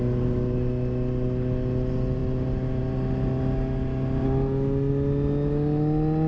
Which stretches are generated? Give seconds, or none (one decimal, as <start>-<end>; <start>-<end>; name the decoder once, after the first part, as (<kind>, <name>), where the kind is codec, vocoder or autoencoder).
none